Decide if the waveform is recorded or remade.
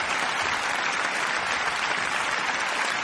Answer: recorded